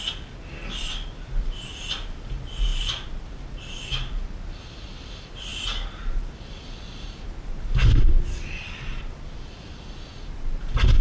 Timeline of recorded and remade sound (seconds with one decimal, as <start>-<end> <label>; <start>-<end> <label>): 0.0-11.0 recorded